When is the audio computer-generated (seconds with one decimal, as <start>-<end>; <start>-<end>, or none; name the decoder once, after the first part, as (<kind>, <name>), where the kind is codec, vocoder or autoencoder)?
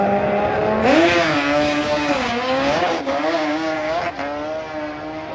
0.8-4.0 (codec, DAC)